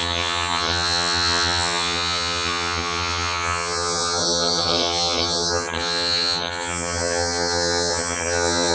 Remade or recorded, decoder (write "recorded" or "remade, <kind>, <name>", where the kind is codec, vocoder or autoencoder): remade, vocoder, HiFi-GAN